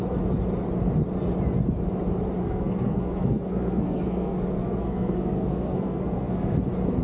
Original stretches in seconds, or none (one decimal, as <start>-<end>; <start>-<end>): 0.0-2.4; 6.6-7.0